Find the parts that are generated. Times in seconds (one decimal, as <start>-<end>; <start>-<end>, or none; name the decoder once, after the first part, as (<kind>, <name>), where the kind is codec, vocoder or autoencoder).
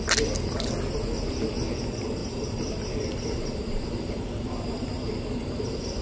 2.2-6.0 (vocoder, BigVGAN v2)